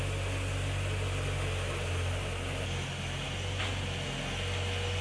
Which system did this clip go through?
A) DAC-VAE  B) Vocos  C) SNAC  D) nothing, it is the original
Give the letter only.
D